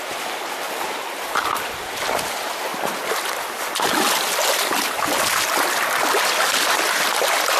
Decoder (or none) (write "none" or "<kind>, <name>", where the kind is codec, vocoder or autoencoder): none